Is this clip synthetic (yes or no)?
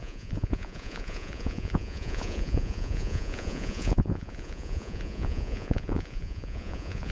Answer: yes